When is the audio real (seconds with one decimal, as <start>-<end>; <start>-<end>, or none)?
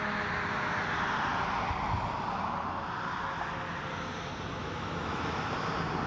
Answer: 0.0-4.6; 5.4-6.1